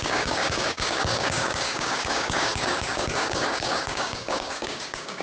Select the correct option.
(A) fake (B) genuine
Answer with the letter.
A